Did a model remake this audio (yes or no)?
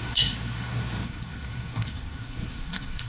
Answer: yes